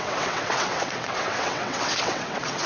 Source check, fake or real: fake